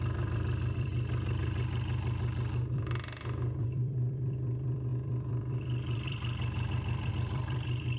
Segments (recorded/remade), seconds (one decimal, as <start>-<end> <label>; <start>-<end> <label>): 0.0-0.9 remade; 0.9-1.4 recorded; 1.4-8.0 remade